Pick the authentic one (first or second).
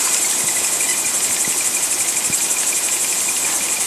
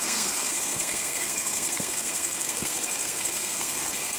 first